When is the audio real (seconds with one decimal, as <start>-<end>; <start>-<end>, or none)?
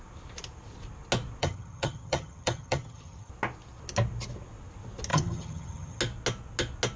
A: 0.0-1.4; 3.3-5.1; 6.0-7.0